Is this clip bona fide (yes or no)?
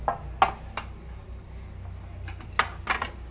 yes